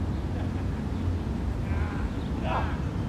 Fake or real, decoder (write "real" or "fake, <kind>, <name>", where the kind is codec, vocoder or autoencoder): real